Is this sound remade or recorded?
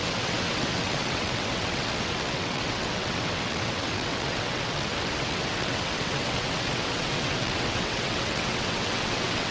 remade